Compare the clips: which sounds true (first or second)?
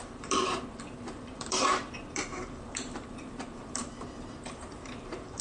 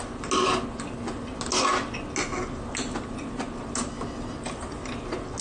second